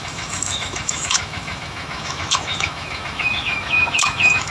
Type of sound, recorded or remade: remade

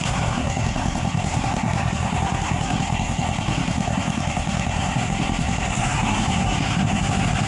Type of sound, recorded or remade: remade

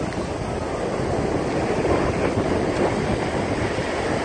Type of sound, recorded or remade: recorded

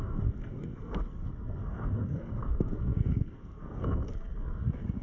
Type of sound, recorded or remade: remade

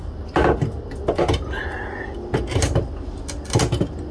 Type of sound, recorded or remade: recorded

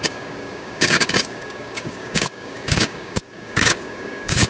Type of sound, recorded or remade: remade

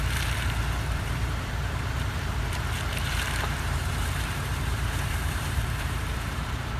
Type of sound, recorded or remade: remade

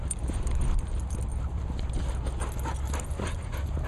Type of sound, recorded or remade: recorded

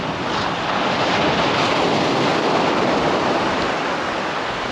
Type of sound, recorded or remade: recorded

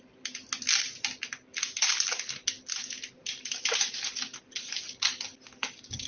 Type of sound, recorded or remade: recorded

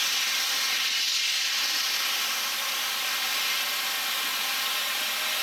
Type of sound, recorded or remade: recorded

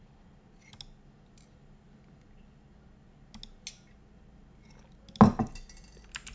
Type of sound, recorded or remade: recorded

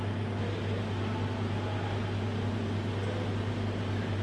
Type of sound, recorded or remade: recorded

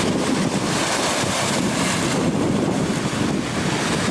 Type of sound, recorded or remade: recorded